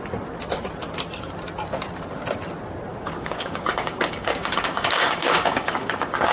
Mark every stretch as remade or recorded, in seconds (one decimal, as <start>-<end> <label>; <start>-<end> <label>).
0.0-2.9 recorded; 2.9-6.3 remade